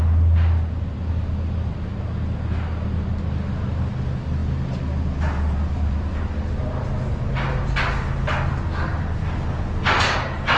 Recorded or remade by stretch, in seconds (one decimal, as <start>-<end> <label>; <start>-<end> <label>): 0.0-10.6 recorded